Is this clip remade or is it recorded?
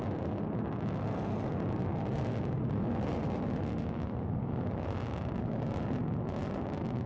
recorded